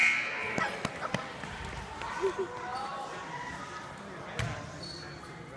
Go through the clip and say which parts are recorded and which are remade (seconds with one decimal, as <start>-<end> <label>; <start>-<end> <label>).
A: 0.0-5.6 recorded